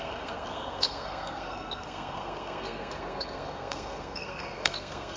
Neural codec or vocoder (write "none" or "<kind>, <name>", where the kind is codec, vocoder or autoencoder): codec, SNAC